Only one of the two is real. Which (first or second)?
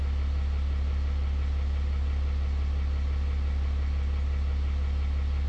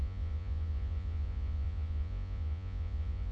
first